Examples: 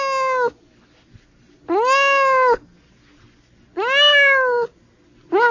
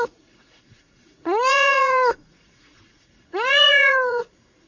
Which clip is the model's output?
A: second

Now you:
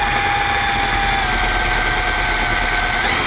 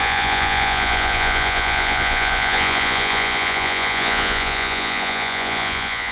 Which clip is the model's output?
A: second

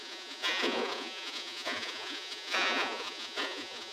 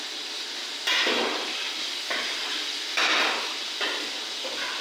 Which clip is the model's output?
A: first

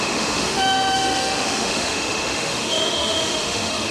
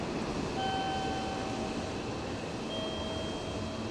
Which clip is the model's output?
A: first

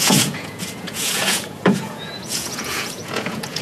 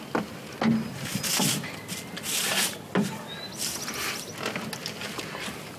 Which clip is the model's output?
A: first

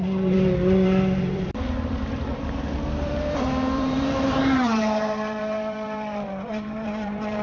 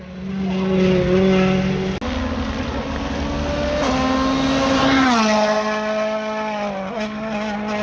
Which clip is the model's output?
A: first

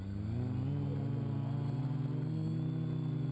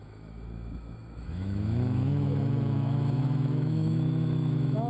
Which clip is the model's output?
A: second